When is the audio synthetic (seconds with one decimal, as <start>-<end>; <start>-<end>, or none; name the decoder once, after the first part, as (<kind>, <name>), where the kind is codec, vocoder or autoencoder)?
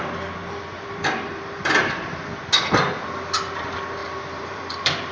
0.7-2.3 (vocoder, BigVGAN v2); 4.0-5.1